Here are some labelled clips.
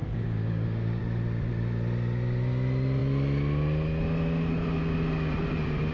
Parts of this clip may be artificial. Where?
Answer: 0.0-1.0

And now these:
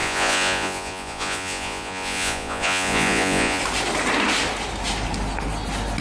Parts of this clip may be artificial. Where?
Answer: 0.0-3.6